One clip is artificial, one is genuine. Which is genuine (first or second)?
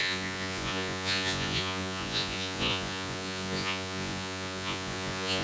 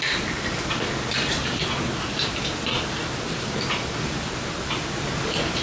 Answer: second